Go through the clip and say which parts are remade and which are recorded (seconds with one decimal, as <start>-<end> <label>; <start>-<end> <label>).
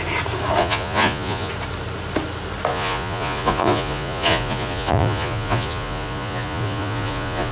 0.0-0.6 recorded; 0.6-1.5 remade; 1.5-2.7 recorded; 2.7-7.5 remade